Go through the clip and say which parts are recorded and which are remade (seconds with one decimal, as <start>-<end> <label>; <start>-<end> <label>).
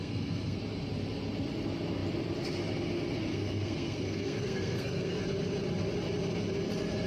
0.0-0.6 remade; 0.6-3.3 recorded; 3.3-5.2 remade; 5.2-7.1 recorded